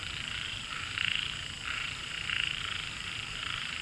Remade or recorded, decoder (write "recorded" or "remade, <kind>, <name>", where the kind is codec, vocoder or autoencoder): remade, vocoder, BigVGAN v2